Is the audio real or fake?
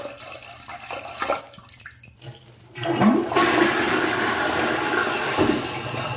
real